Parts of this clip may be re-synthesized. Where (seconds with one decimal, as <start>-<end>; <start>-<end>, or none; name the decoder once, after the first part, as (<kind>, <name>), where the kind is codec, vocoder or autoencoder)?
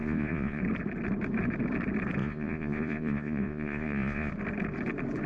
0.0-0.6 (vocoder, Vocos); 2.2-4.3